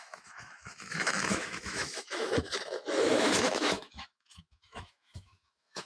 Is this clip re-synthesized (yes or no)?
yes